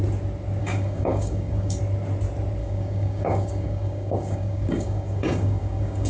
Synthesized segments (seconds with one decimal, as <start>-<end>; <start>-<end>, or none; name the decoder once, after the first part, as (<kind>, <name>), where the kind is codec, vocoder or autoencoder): 0.6-1.8 (codec, DAC); 2.6-6.1